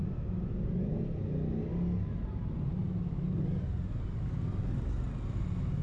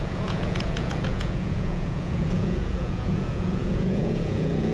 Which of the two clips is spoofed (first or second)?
second